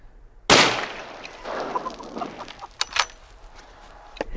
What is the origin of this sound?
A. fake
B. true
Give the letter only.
B